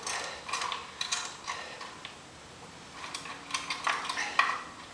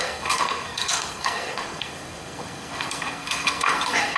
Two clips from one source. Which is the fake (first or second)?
second